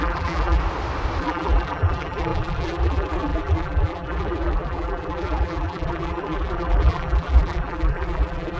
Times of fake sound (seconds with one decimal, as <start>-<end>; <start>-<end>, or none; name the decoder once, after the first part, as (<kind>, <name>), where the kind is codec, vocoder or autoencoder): 0.0-0.6 (vocoder, BigVGAN v2); 1.2-8.6